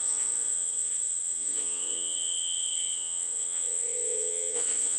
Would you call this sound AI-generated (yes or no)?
yes